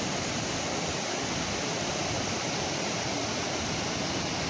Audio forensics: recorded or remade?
recorded